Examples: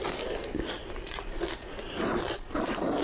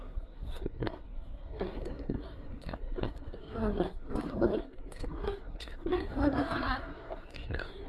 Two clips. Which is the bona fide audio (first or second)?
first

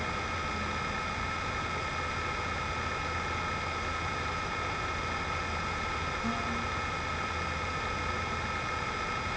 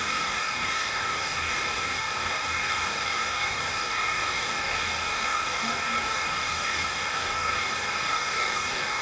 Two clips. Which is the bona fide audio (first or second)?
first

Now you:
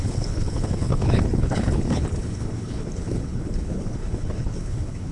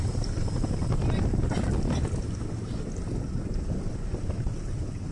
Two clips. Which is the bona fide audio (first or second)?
second